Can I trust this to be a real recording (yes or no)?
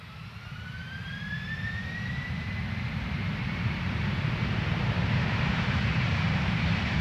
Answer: no